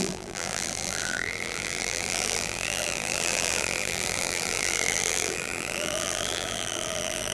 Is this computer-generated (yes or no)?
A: yes